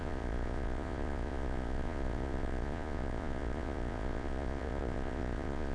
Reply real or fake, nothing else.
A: fake